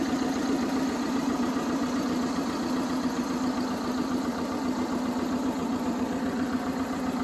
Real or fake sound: real